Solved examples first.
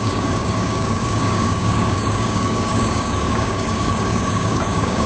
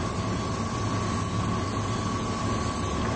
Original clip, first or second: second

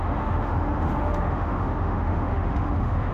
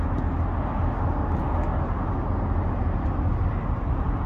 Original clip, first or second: second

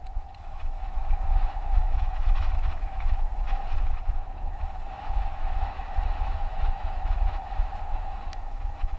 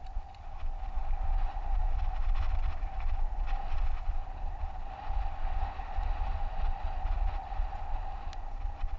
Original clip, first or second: second